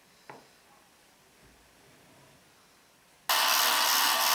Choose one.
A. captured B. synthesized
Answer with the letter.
A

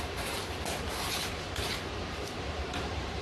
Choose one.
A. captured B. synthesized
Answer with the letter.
B